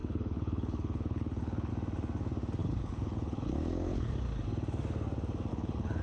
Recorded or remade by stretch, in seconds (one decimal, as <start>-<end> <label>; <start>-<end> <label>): 0.0-1.7 remade; 1.7-2.6 recorded; 2.6-4.1 remade; 4.1-5.5 recorded; 5.5-6.0 remade